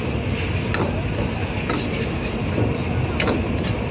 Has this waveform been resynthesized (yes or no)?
no